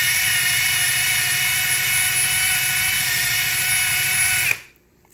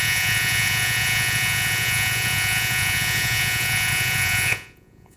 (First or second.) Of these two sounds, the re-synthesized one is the second